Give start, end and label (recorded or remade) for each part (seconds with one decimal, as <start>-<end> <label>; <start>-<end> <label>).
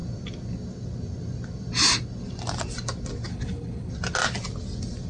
0.0-3.3 recorded; 3.3-3.9 remade; 3.9-5.1 recorded